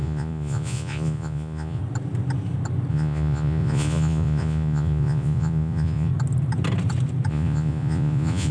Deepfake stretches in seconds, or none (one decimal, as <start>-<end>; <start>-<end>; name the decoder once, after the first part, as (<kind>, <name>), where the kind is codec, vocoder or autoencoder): 0.0-1.8 (vocoder, Vocos); 2.9-6.1; 7.3-8.5